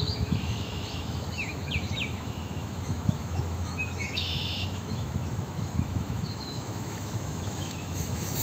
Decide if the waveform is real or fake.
fake